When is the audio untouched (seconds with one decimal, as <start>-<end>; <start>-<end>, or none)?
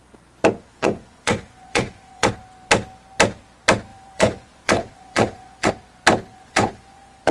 0.0-0.7; 2.3-3.9; 5.7-6.3